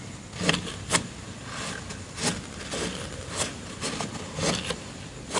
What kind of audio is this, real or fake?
real